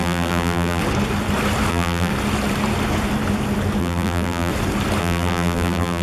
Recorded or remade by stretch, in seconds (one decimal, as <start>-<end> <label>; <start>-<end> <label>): 0.0-0.8 remade; 0.8-1.7 recorded; 1.7-2.1 remade; 2.1-3.8 recorded; 3.8-4.5 remade; 4.5-5.0 recorded; 5.0-6.0 remade